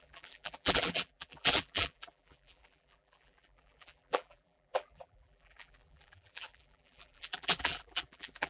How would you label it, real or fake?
fake